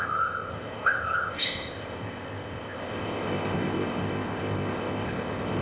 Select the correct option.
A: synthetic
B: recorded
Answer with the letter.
A